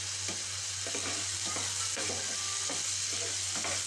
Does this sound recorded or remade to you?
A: recorded